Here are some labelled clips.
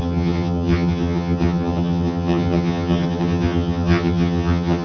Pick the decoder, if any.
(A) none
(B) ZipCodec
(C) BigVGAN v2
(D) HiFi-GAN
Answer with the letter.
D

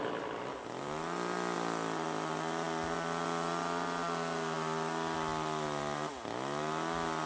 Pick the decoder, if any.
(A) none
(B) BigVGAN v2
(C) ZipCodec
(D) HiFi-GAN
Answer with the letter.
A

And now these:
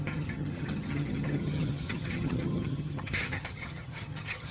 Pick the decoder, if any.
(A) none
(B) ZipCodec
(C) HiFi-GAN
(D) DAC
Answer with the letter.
C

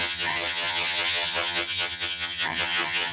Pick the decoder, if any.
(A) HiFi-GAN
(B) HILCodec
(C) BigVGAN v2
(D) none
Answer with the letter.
A